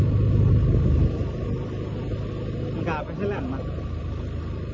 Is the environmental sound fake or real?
real